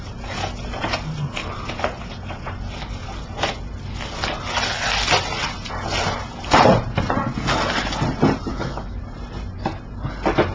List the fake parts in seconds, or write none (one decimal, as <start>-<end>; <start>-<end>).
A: 8.5-9.0